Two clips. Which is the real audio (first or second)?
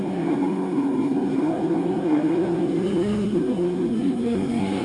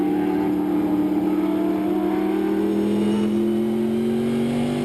second